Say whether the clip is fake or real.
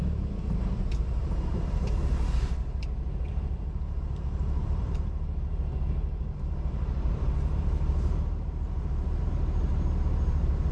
fake